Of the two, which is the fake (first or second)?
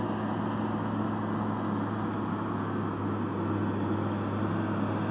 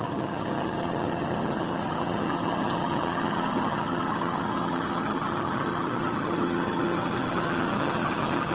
second